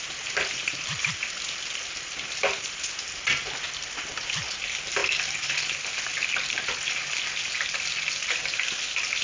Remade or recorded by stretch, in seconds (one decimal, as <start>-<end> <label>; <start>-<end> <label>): 0.0-9.2 recorded

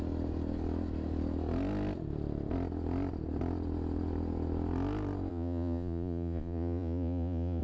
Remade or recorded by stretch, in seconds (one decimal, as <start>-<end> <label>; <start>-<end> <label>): 0.0-5.3 recorded; 5.3-7.6 remade